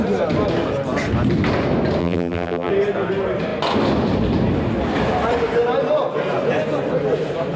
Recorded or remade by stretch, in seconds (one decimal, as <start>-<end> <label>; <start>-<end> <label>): 0.0-2.0 recorded; 2.0-2.7 remade; 2.7-7.6 recorded